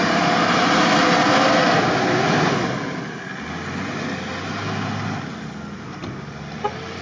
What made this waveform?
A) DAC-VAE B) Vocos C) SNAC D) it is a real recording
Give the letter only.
D